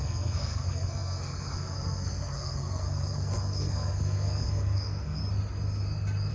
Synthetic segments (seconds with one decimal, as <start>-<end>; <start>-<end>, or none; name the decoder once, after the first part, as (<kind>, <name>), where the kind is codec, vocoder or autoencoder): 0.0-5.2 (codec, SNAC)